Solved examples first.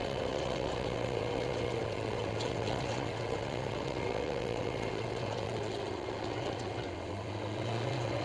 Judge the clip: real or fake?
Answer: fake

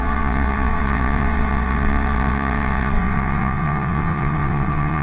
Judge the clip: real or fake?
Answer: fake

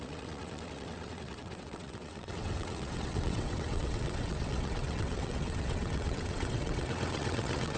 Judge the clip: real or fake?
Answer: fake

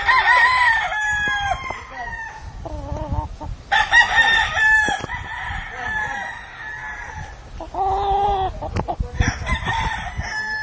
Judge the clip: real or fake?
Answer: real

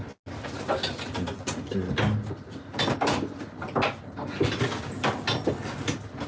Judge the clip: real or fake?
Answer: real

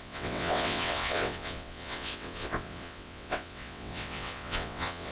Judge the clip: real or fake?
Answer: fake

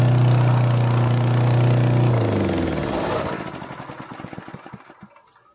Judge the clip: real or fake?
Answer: real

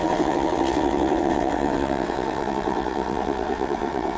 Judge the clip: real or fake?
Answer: fake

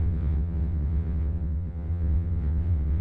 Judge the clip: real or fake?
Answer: fake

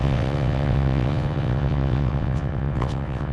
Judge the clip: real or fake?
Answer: fake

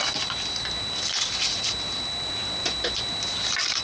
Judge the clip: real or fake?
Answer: real